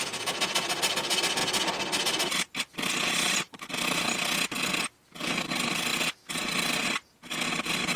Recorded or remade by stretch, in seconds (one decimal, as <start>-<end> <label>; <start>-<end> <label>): 0.0-8.0 recorded